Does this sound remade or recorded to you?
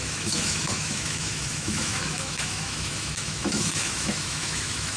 remade